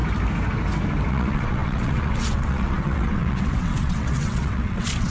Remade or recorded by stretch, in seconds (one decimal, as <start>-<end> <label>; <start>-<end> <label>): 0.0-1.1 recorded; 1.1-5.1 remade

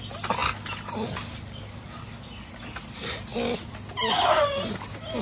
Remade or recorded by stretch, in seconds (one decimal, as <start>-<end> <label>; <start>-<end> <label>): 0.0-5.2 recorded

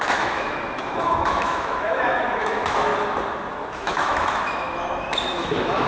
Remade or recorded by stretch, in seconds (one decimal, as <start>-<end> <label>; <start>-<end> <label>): 0.0-2.9 remade; 2.9-3.5 recorded; 3.5-5.9 remade

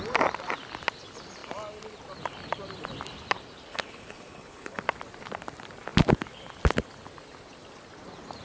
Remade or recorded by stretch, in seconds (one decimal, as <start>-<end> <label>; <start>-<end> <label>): 0.0-3.7 recorded; 3.7-4.8 remade; 4.8-8.4 recorded

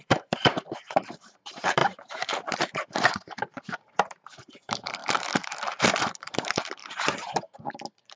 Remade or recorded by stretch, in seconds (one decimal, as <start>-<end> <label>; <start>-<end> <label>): 0.0-5.0 remade; 5.0-5.8 recorded; 5.8-8.2 remade

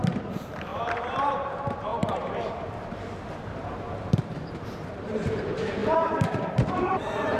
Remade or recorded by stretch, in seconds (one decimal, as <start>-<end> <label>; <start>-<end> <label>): 0.0-1.9 remade; 1.9-2.5 recorded; 2.5-7.4 remade

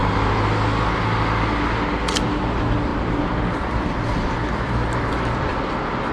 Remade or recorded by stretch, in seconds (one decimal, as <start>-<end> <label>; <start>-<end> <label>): 0.0-2.9 recorded; 2.9-5.1 remade; 5.1-6.1 recorded